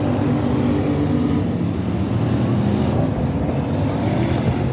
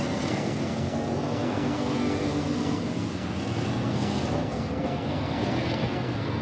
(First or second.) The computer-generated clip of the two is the second